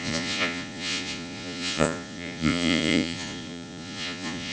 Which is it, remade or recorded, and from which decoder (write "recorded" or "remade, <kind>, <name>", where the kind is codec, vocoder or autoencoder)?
remade, vocoder, Vocos